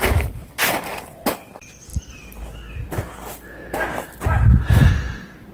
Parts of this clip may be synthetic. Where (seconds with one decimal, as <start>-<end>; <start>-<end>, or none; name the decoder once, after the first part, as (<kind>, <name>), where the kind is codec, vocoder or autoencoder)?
0.4-1.0 (vocoder, BigVGAN v2)